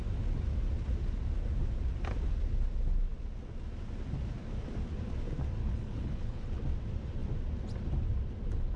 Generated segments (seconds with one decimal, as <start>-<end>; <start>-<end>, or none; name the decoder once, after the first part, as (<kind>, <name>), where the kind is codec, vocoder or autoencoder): 5.6-6.6 (codec, HILCodec)